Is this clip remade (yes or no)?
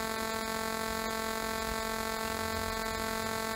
no